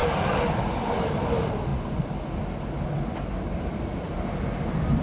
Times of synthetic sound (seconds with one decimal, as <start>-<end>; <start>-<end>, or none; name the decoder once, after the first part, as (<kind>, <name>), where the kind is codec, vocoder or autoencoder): none